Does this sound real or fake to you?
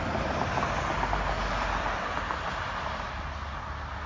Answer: real